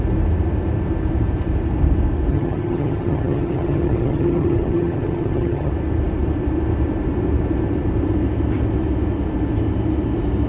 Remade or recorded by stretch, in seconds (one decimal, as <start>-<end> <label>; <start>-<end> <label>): 0.0-2.3 recorded; 2.3-5.7 remade; 5.7-10.5 recorded